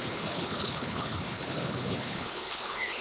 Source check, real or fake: fake